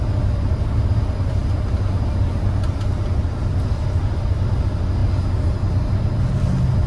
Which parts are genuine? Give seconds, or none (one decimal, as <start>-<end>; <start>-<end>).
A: 0.0-6.9